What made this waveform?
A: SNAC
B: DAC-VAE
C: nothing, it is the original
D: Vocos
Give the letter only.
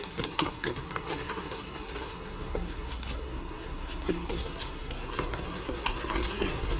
A